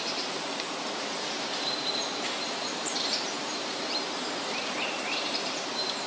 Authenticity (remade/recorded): remade